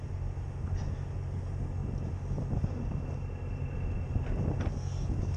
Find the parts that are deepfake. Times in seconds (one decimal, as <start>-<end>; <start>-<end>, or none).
none